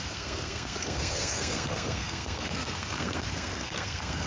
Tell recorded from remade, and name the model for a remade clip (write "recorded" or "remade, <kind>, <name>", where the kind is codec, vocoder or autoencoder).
remade, codec, SNAC